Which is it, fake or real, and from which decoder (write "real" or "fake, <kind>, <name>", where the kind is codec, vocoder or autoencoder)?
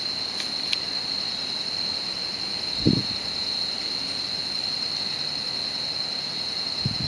real